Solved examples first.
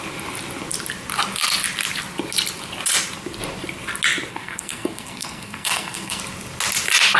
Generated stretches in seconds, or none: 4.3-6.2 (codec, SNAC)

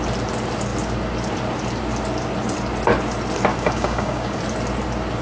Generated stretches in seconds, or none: 3.5-4.4 (codec, DAC)

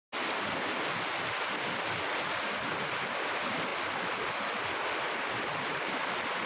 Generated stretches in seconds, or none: 5.1-5.9 (vocoder, BigVGAN v2)

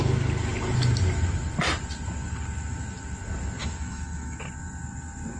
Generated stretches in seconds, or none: 3.6-4.4 (autoencoder, DAC-VAE)